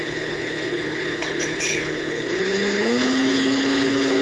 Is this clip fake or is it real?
fake